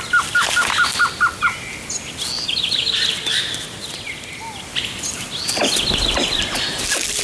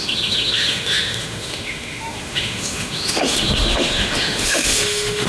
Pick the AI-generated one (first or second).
second